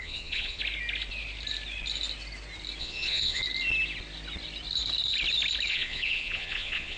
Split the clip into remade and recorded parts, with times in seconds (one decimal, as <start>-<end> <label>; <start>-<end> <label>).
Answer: 0.0-0.6 remade; 0.6-2.8 recorded; 2.8-3.4 remade; 3.4-5.7 recorded; 5.7-7.0 remade